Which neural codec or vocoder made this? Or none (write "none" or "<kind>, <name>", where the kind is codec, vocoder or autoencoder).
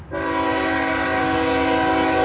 none